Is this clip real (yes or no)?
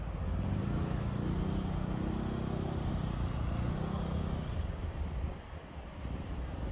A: yes